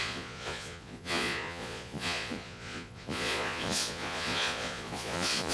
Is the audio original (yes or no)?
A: no